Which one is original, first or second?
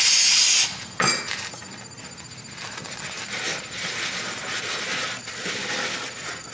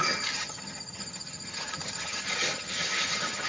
first